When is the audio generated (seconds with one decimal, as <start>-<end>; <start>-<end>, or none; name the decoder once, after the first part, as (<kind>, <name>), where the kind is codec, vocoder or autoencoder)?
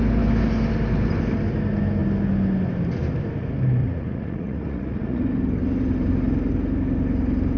3.8-5.2 (vocoder, Vocos)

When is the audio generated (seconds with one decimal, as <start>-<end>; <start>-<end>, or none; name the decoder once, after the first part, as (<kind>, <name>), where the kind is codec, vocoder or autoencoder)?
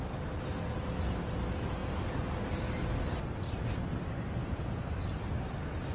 none